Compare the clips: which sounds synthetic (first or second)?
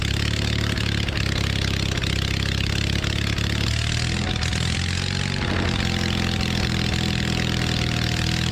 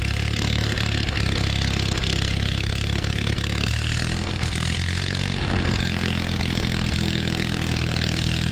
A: second